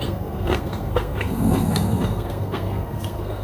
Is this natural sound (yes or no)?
no